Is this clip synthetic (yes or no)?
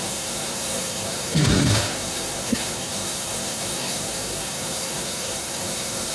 yes